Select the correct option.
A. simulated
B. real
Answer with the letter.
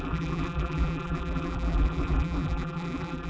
A